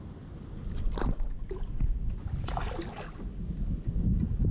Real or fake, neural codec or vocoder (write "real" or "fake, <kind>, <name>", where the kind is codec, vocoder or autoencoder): real